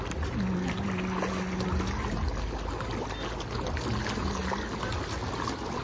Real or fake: real